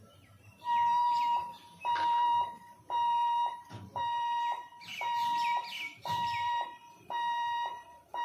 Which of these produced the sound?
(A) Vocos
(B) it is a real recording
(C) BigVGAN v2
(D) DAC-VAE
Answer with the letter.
C